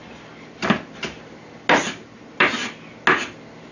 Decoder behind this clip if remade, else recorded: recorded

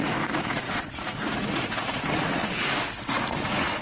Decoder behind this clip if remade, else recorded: remade, vocoder, Vocos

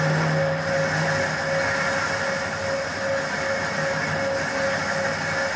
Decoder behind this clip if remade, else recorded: recorded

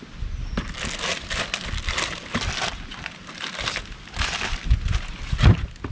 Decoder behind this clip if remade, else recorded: recorded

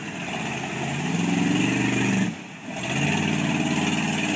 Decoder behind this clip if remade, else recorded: recorded